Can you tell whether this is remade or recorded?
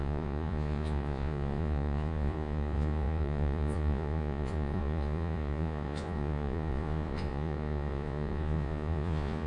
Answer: remade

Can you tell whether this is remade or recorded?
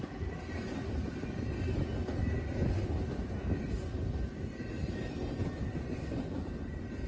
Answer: recorded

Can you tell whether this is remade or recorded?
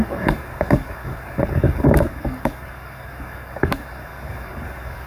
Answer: remade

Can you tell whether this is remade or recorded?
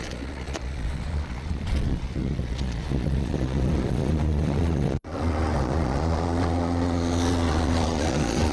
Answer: remade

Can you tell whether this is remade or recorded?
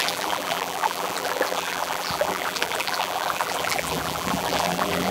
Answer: remade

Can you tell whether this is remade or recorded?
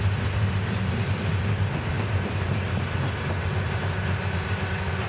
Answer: recorded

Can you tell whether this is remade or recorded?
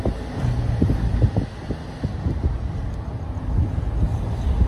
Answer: recorded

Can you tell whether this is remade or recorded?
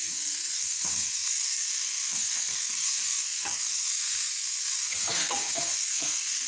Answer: remade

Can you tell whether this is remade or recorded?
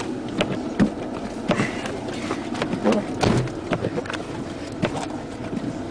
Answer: recorded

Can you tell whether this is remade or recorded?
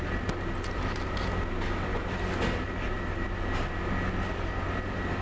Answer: recorded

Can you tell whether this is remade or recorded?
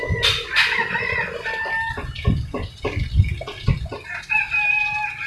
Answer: recorded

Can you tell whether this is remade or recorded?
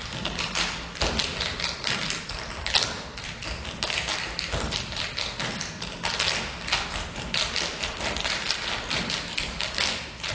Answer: recorded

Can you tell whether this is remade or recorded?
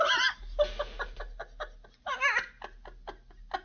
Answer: recorded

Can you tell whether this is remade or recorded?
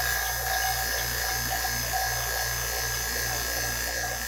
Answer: recorded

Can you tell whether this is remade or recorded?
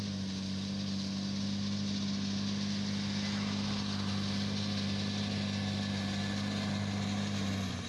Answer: recorded